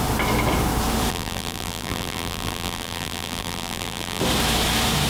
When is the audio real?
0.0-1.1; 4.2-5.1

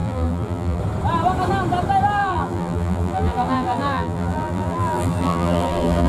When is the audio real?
0.8-2.2

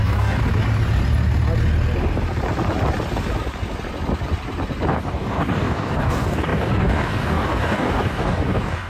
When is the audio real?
0.4-4.9

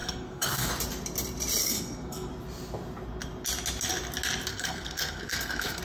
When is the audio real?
0.7-1.6; 2.3-4.5

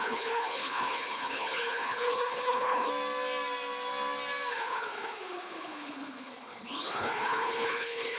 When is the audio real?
2.9-4.5

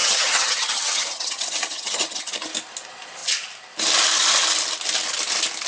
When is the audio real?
2.5-5.7